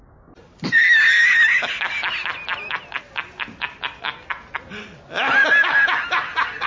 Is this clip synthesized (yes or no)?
no